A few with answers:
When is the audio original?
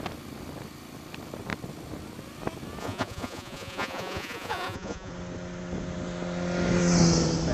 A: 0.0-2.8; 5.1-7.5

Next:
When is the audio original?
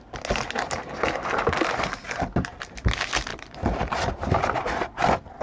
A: 0.0-3.3; 4.3-5.4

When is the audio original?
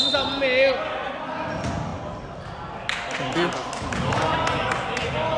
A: 0.0-5.4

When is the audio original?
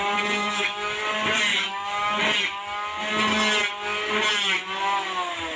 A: 0.0-0.4; 1.0-1.5; 2.2-5.6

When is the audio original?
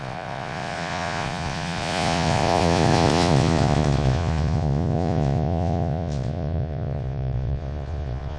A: none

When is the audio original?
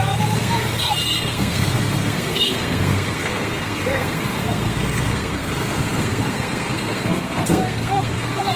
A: none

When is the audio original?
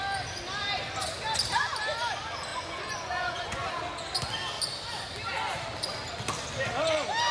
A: 0.0-2.5; 3.7-7.3